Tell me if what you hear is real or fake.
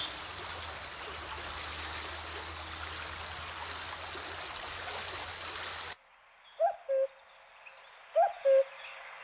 real